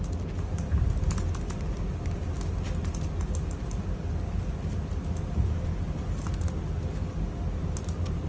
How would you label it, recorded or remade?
recorded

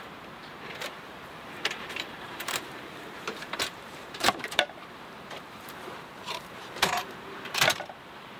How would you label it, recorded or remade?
remade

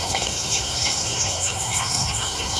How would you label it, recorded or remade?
remade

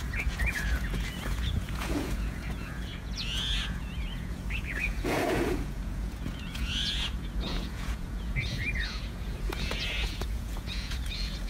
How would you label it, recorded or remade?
remade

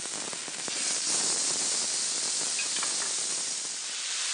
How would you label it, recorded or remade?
recorded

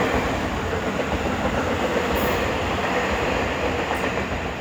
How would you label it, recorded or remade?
recorded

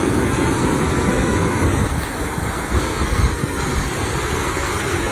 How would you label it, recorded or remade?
remade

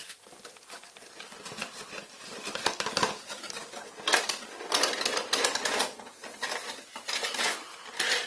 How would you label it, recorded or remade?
recorded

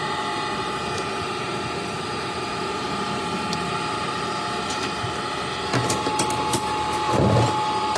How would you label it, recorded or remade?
recorded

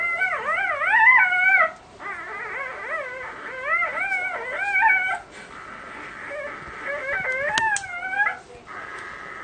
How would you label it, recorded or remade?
recorded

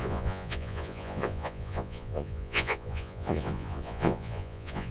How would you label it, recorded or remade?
remade